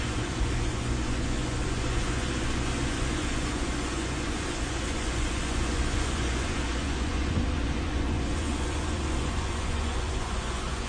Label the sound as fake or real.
fake